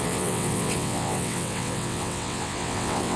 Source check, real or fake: fake